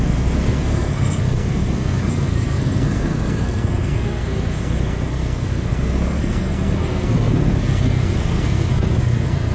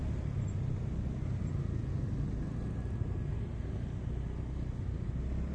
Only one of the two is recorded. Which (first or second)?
second